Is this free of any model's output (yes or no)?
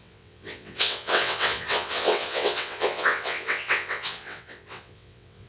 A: no